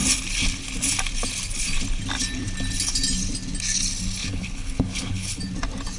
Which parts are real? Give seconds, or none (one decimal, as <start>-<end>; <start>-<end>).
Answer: 0.0-4.2; 5.4-6.0

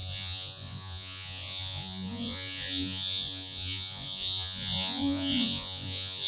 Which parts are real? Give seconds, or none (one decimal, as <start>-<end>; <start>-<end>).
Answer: none